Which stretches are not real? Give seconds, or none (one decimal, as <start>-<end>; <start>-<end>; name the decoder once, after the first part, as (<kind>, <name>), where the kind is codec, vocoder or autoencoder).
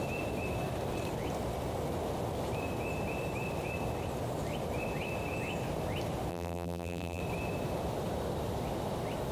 6.3-7.2 (vocoder, BigVGAN v2)